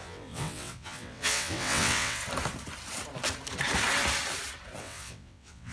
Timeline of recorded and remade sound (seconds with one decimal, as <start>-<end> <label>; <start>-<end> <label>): 0.0-2.2 remade; 2.2-4.8 recorded; 4.8-5.7 remade